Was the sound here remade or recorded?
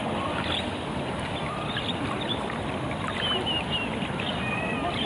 recorded